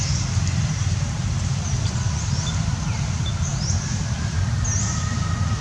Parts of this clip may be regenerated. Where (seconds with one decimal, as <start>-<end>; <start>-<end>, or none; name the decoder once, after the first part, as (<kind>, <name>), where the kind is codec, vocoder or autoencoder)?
0.0-3.5 (vocoder, BigVGAN v2)